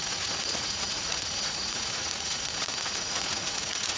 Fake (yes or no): yes